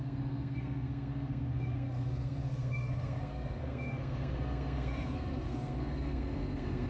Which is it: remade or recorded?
remade